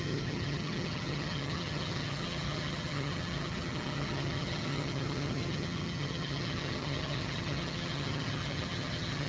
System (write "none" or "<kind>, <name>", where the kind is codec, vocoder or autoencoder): vocoder, HiFi-GAN